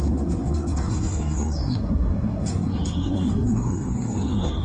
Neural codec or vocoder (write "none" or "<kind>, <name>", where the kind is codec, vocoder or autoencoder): codec, SNAC